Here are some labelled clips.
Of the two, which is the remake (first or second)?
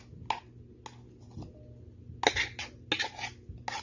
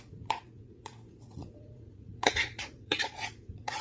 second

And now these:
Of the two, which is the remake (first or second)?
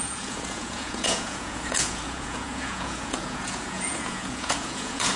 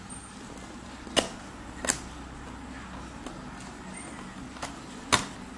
first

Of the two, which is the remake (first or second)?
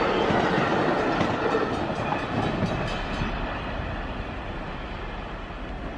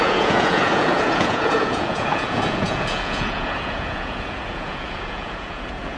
second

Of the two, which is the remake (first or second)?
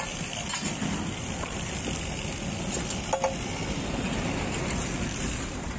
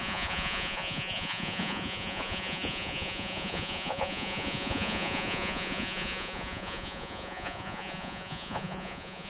second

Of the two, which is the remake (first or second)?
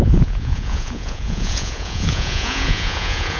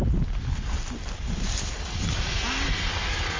first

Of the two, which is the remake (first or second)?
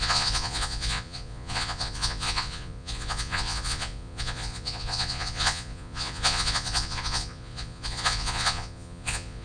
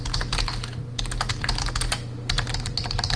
first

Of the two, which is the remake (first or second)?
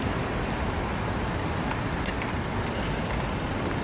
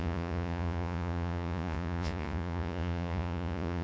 second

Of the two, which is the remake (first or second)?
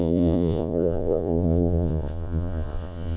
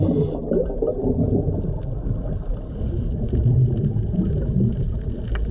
first